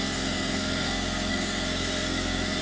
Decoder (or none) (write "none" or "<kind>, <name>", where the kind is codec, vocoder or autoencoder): codec, SNAC